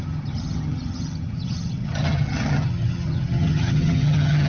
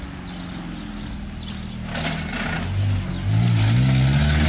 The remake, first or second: first